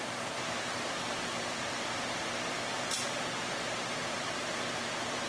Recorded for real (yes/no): no